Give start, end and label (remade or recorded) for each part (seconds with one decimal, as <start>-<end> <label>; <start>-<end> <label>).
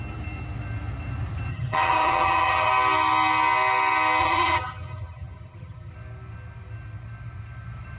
0.0-1.5 recorded; 1.5-2.7 remade; 2.7-4.2 recorded; 4.2-5.9 remade; 5.9-8.0 recorded